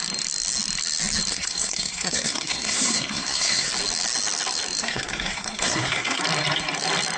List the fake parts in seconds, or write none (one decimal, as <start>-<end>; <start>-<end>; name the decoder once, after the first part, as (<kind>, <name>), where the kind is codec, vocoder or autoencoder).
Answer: 1.3-3.7 (codec, SNAC); 4.8-6.2